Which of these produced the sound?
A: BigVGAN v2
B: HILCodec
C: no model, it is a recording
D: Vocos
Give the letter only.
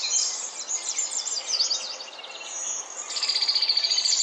C